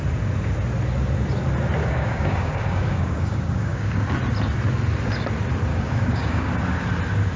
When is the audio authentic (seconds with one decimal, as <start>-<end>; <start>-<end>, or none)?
0.0-1.8; 4.0-5.7; 6.5-7.4